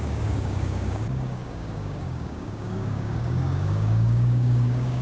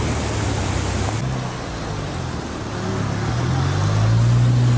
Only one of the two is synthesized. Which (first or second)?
first